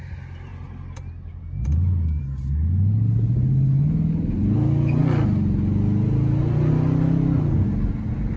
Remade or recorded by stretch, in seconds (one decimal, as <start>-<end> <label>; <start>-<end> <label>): 0.0-8.4 recorded